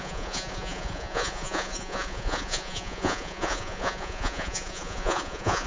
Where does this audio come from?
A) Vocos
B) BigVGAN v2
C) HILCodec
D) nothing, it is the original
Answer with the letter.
A